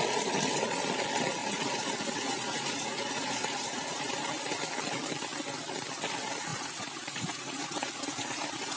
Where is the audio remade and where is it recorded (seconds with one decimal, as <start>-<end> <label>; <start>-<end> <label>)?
0.0-1.4 recorded; 1.4-4.1 remade; 4.1-6.5 recorded; 6.5-8.8 remade